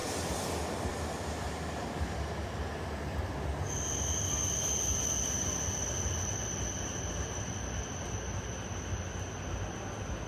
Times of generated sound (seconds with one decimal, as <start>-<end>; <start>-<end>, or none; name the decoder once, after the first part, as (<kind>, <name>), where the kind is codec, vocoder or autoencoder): none